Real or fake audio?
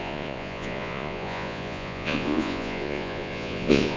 fake